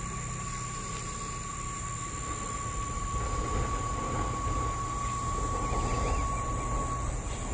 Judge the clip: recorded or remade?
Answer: recorded